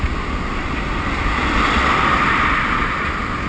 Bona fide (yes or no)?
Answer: yes